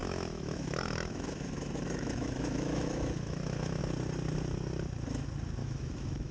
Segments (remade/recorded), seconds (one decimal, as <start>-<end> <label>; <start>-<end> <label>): 0.0-3.8 remade; 3.8-5.6 recorded; 5.6-6.3 remade